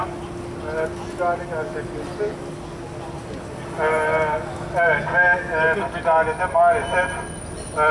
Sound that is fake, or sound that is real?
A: real